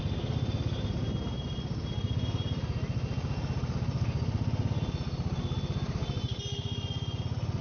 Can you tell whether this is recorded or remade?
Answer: recorded